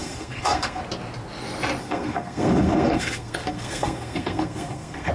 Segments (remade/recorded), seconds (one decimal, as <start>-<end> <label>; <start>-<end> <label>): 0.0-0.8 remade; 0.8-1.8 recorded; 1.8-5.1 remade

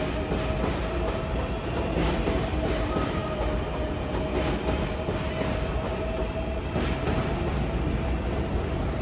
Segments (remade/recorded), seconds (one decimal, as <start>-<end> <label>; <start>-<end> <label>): 0.0-9.0 recorded

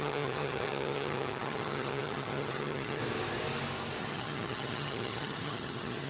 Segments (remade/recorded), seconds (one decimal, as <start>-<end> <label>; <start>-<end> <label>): 0.0-3.0 remade; 3.0-4.0 recorded; 4.0-6.1 remade

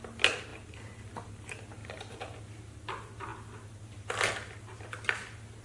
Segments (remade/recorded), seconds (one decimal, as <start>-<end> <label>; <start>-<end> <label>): 0.0-1.8 recorded; 1.8-2.4 remade; 2.4-5.6 recorded

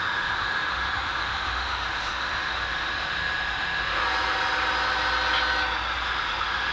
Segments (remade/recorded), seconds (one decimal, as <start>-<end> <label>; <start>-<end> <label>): 0.0-4.0 remade; 4.0-6.0 recorded; 6.0-6.7 remade

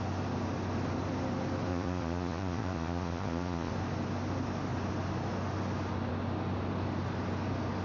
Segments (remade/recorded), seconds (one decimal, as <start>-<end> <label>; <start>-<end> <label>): 0.0-1.7 recorded; 1.7-3.7 remade; 3.7-7.8 recorded

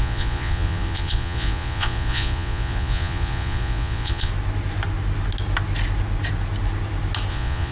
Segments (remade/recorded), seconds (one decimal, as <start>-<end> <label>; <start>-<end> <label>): 0.0-4.3 remade; 4.3-7.3 recorded; 7.3-7.7 remade

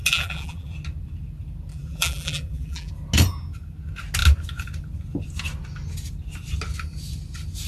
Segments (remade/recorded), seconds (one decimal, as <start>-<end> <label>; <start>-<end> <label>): 0.0-0.7 remade; 0.7-1.7 recorded; 1.7-2.9 remade; 2.9-7.7 recorded